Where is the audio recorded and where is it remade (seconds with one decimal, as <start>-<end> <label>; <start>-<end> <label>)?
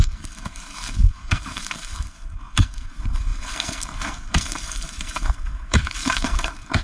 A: 0.0-6.8 remade